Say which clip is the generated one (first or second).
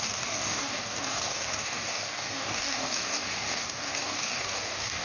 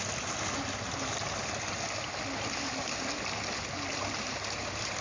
first